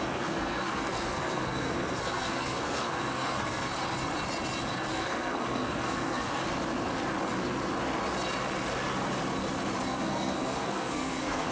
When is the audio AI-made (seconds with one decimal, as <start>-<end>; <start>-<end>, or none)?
0.0-3.7; 4.9-6.4; 9.9-11.5

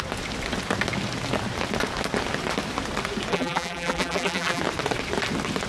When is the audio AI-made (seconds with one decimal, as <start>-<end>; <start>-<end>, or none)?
3.3-4.6

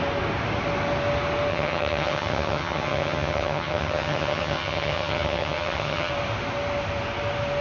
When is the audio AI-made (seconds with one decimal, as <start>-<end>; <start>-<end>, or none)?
1.5-6.1

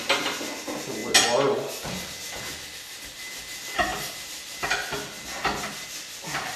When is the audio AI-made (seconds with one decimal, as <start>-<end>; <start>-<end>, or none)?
none

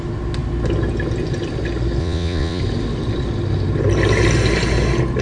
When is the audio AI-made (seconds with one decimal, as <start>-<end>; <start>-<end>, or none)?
2.0-2.6

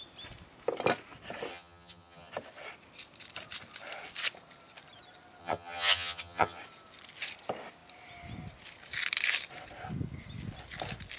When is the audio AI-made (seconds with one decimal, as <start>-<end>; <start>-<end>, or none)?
1.5-2.3; 5.4-6.6